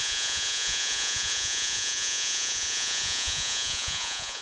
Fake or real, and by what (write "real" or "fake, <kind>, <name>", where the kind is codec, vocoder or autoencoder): fake, vocoder, Vocos